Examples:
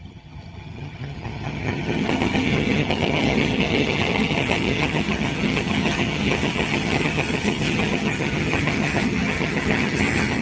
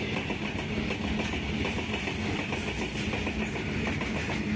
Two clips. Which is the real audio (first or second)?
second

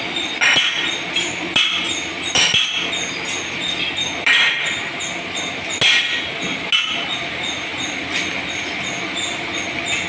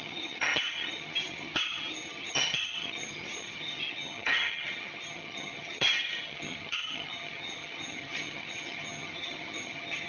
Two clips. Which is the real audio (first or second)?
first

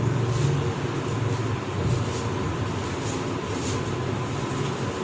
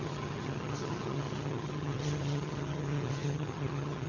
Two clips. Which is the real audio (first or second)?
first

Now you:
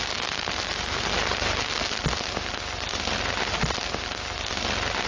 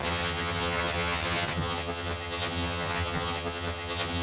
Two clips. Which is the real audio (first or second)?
first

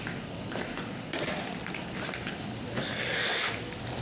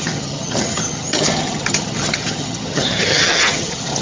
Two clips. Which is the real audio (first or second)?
first